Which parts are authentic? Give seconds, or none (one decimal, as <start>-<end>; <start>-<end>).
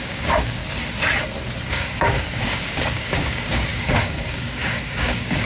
0.6-1.7